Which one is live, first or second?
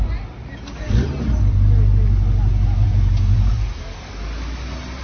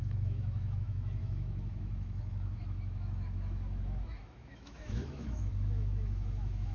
first